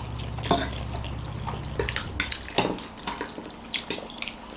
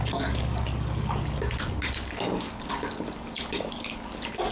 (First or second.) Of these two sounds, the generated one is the second